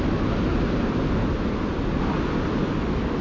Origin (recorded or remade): recorded